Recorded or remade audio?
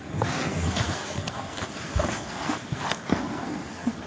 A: remade